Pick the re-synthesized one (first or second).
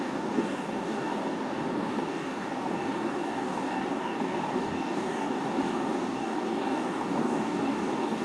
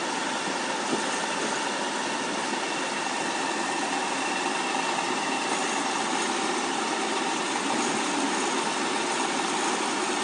first